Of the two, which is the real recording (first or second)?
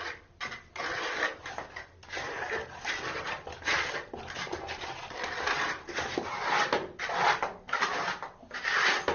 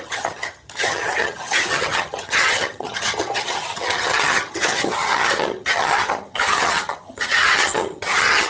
first